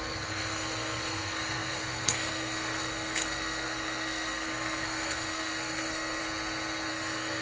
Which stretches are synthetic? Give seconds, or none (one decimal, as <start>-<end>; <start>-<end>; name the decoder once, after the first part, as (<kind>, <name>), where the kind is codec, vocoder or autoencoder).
0.0-6.2 (codec, SNAC); 6.9-7.4